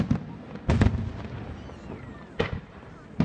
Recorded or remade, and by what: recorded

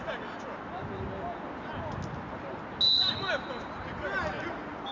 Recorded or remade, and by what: recorded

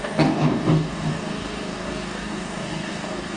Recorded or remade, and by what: remade, codec, DAC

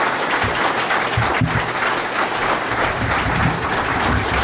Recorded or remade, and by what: recorded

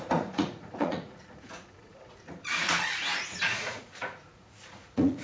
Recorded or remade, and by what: remade, vocoder, Vocos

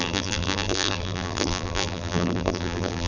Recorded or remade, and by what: remade, vocoder, BigVGAN v2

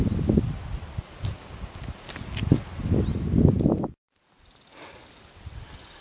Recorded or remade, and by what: recorded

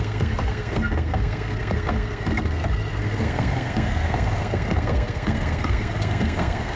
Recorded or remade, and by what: remade, codec, SNAC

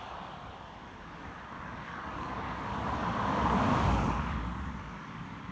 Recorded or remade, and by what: remade, codec, DAC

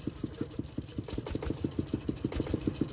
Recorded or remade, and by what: recorded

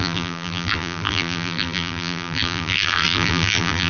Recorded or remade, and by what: remade, vocoder, BigVGAN v2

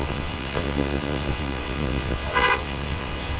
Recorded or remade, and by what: remade, vocoder, WaveNeXt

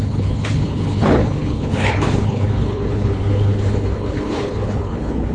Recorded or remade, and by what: remade, codec, HILCodec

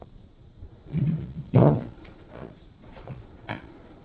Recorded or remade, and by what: remade, vocoder, Vocos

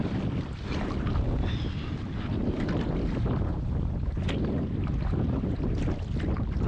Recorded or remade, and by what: recorded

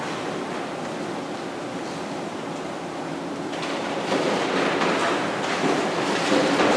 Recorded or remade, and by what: recorded